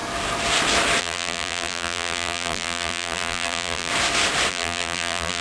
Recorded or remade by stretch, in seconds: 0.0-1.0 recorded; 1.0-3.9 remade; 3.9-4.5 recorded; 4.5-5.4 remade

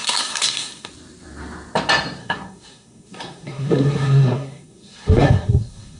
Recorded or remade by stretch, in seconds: 0.0-0.9 remade; 0.9-2.2 recorded; 2.2-6.0 remade

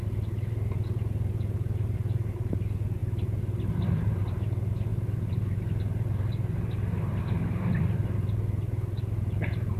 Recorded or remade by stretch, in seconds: 0.0-9.8 recorded

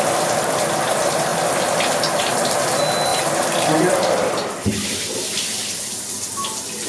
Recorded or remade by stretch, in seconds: 0.0-1.3 recorded; 1.3-1.9 remade; 1.9-3.1 recorded; 3.1-5.8 remade; 5.8-6.9 recorded